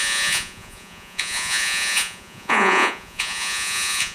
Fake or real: fake